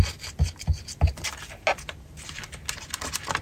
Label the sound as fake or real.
real